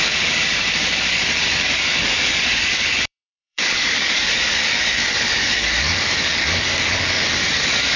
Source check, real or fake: fake